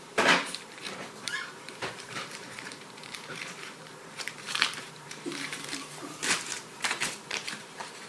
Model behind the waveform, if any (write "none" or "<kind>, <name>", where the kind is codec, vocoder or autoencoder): vocoder, BigVGAN v2